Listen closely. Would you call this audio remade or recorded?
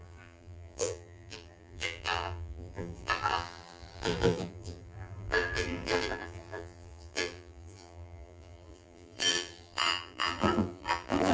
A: remade